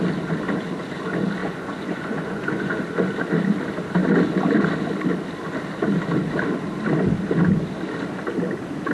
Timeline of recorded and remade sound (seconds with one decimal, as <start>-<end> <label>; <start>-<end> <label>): 0.0-1.4 recorded; 1.4-2.8 remade; 2.8-8.9 recorded